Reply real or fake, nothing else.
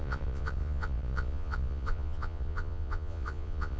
fake